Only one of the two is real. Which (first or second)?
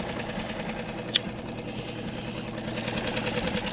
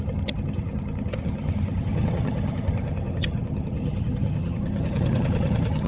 first